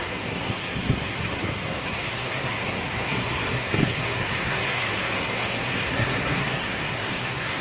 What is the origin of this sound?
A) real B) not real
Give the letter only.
B